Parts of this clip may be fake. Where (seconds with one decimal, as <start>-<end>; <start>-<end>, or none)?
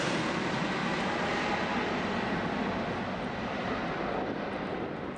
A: none